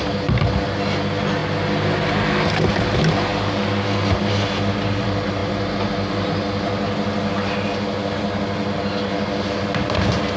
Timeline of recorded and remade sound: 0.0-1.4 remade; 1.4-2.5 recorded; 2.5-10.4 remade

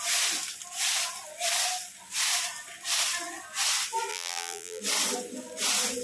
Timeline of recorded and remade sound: 0.0-4.1 recorded; 4.1-4.8 remade; 4.8-6.0 recorded

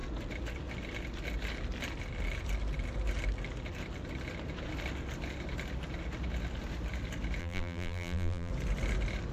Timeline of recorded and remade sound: 0.0-7.4 recorded; 7.4-8.5 remade; 8.5-9.3 recorded

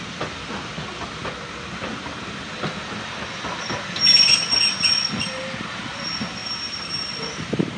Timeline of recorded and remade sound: 0.0-6.4 recorded; 6.4-7.1 remade; 7.1-7.8 recorded

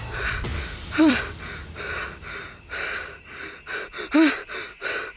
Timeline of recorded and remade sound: 0.0-0.5 recorded; 0.5-1.2 remade; 1.2-5.2 recorded